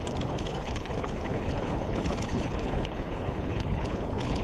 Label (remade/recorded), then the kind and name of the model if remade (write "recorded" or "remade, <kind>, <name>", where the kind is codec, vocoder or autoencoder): remade, codec, HILCodec